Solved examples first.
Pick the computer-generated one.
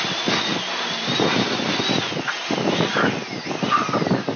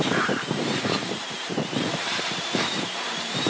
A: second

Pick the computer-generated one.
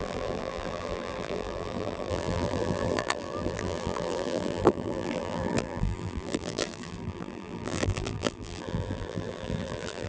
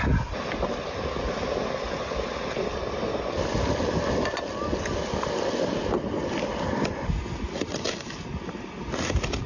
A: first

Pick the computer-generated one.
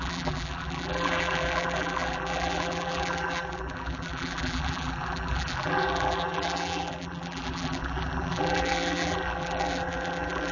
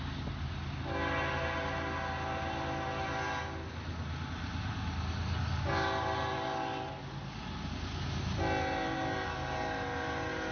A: first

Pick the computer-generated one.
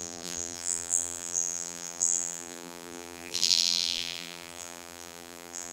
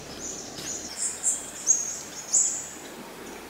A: first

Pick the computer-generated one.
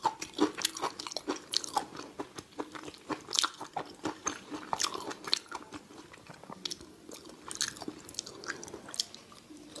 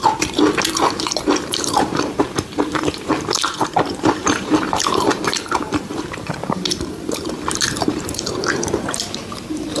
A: second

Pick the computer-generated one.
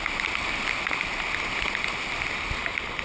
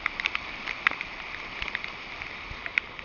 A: second